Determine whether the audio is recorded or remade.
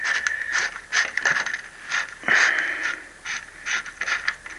recorded